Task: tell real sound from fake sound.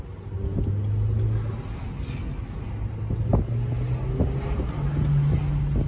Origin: real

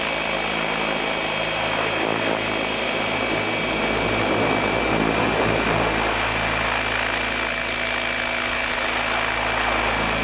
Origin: real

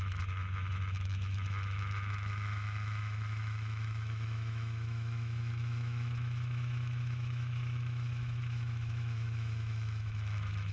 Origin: fake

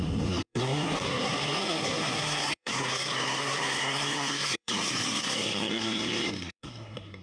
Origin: fake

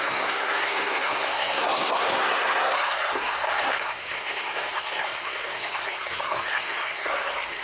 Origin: fake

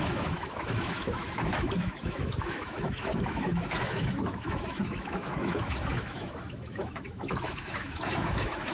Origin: fake